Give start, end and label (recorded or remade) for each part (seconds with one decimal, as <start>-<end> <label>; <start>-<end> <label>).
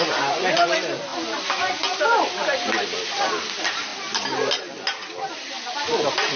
0.0-6.4 recorded